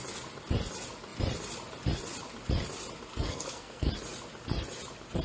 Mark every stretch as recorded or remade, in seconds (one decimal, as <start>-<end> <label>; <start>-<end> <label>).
0.0-3.1 recorded; 3.1-3.9 remade; 3.9-5.2 recorded